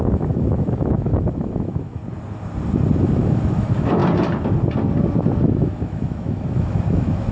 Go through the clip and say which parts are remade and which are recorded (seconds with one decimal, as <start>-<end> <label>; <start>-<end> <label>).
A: 0.0-2.0 remade; 2.0-3.0 recorded; 3.0-4.0 remade; 4.0-5.4 recorded; 5.4-7.3 remade